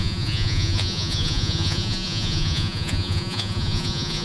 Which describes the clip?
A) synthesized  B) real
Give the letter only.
A